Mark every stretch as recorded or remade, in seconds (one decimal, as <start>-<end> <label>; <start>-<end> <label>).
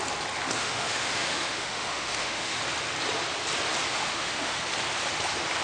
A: 0.0-0.6 recorded; 0.6-2.6 remade; 2.6-3.9 recorded; 3.9-4.6 remade; 4.6-5.6 recorded